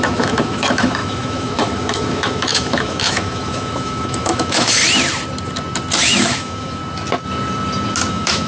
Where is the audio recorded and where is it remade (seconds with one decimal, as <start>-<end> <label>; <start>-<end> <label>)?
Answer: 0.0-4.8 remade; 4.8-6.0 recorded; 6.0-6.8 remade; 6.8-8.1 recorded; 8.1-8.5 remade

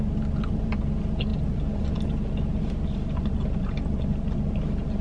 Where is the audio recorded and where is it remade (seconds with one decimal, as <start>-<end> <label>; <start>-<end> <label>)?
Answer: 0.0-5.0 recorded

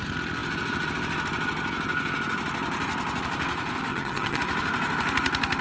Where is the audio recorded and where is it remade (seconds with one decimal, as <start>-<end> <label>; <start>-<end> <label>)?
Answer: 0.0-3.9 recorded; 3.9-4.4 remade; 4.4-5.6 recorded

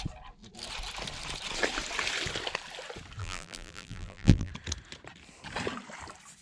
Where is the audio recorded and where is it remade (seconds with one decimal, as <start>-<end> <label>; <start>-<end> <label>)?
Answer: 0.0-3.2 recorded; 3.2-4.5 remade; 4.5-6.4 recorded

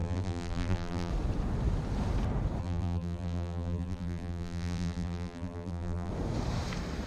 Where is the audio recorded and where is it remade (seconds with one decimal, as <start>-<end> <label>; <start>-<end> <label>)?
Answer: 0.0-1.1 remade; 1.1-2.6 recorded; 2.6-6.1 remade; 6.1-7.1 recorded

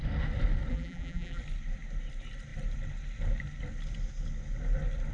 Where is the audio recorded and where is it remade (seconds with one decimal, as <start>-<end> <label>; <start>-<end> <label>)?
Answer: 0.0-0.7 recorded; 0.7-1.4 remade; 1.4-5.1 recorded

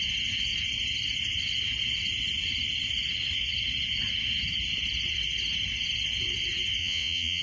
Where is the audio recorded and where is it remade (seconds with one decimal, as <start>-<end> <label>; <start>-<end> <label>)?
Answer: 0.0-6.8 recorded; 6.8-7.4 remade

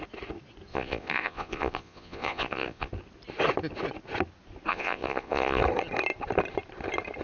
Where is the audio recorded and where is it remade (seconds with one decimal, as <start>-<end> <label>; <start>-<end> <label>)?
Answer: 0.0-0.7 recorded; 0.7-2.9 remade; 2.9-4.7 recorded; 4.7-5.6 remade; 5.6-7.2 recorded